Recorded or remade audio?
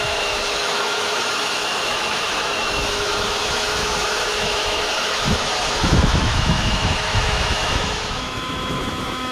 remade